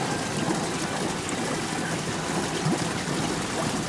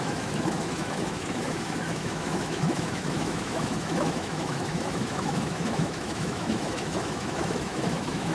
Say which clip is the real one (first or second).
first